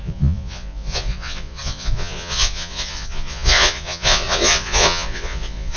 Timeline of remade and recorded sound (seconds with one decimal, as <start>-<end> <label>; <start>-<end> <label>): 0.0-5.8 remade